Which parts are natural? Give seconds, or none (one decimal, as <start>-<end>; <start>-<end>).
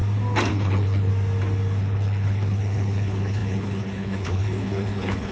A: 0.0-0.5; 1.1-1.8